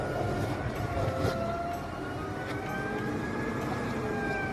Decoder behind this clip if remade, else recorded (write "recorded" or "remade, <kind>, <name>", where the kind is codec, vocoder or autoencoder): recorded